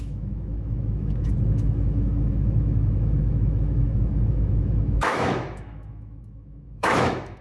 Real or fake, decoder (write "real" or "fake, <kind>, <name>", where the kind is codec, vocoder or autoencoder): fake, autoencoder, DAC-VAE